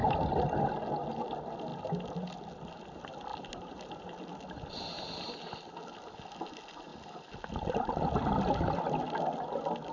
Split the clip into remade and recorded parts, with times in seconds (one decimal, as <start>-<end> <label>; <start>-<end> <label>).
0.0-3.3 recorded; 3.3-3.8 remade; 3.8-9.9 recorded